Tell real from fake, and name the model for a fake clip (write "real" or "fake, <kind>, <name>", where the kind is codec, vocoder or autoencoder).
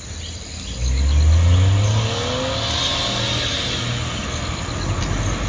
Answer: real